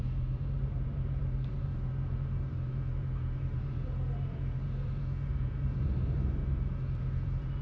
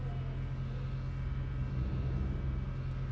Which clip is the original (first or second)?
second